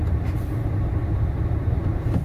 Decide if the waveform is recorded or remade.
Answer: recorded